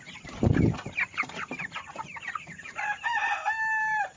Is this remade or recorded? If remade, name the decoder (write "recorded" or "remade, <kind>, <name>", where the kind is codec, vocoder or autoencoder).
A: recorded